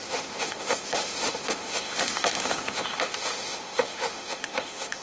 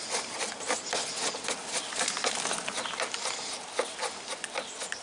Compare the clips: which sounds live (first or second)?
second